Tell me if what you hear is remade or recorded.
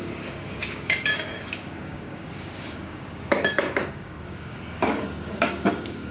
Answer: remade